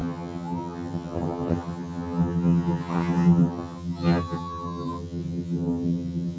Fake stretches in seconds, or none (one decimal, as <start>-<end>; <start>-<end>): 0.0-6.4